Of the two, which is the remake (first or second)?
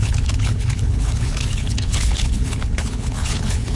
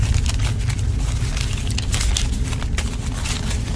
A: first